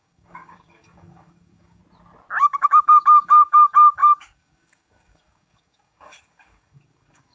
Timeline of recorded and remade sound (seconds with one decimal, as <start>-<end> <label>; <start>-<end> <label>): 0.0-1.8 remade; 1.8-2.4 recorded; 2.4-7.3 remade